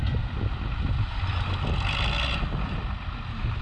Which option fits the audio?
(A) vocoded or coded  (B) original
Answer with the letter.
B